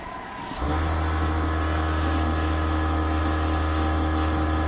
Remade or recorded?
recorded